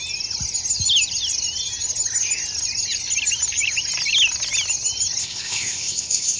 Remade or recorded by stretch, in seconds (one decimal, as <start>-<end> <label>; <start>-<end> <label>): 0.0-5.2 recorded; 5.2-6.4 remade

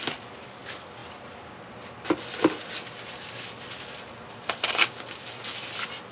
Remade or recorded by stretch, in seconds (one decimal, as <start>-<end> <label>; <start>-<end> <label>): 0.0-6.1 recorded

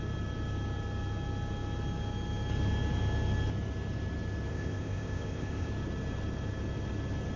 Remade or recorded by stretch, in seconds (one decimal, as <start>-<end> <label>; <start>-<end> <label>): 0.0-4.5 recorded; 4.5-5.7 remade; 5.7-7.4 recorded

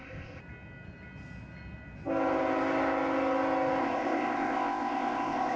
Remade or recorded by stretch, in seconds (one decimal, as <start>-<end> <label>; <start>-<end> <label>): 0.0-0.4 remade; 0.4-3.8 recorded; 3.8-5.6 remade

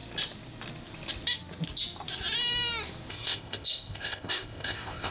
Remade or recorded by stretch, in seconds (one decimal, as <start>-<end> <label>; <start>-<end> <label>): 0.0-3.1 recorded; 3.1-5.1 remade

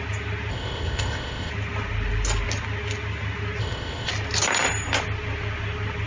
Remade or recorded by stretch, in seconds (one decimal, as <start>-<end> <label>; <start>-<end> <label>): 0.0-0.5 recorded; 0.5-1.5 remade; 1.5-3.6 recorded; 3.6-4.1 remade; 4.1-6.1 recorded

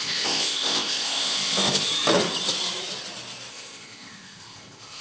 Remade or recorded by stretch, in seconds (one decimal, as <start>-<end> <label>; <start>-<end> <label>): 0.0-1.9 remade; 1.9-3.5 recorded; 3.5-5.0 remade

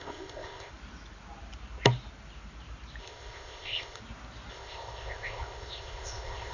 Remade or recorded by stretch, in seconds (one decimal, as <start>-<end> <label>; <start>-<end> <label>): 0.0-0.7 remade; 0.7-3.0 recorded; 3.0-4.0 remade; 4.0-4.5 recorded; 4.5-6.5 remade